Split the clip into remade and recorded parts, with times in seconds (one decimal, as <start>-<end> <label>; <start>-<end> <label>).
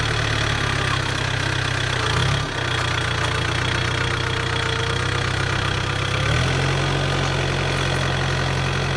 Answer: 0.0-9.0 recorded